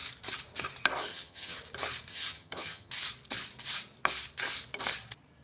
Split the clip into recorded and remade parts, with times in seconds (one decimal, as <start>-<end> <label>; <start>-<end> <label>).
0.0-1.1 recorded; 1.1-1.6 remade; 1.6-2.1 recorded; 2.1-2.9 remade; 2.9-5.4 recorded